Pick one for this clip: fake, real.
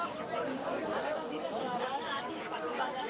fake